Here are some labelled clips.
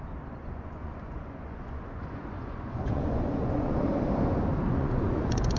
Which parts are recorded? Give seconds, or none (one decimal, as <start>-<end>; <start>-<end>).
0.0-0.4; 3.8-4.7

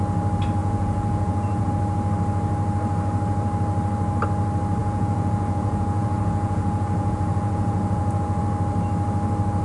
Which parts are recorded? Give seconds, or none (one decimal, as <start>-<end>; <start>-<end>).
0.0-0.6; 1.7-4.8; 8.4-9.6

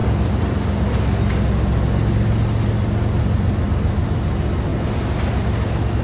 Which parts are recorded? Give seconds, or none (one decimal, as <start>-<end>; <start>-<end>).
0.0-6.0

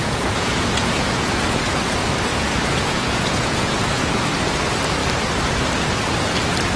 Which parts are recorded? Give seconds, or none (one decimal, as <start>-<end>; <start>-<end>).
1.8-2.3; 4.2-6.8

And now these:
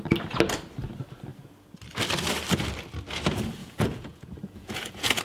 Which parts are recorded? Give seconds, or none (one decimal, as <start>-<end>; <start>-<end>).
0.0-3.6

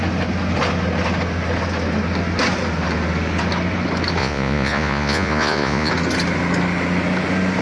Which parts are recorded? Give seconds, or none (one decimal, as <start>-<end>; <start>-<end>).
0.0-4.2; 5.9-7.6

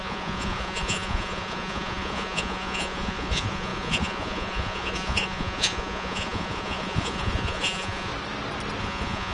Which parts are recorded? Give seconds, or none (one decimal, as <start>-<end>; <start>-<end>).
8.1-8.8

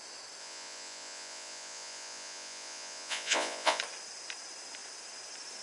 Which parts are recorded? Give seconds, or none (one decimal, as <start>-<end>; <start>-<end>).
0.0-0.4; 3.8-5.6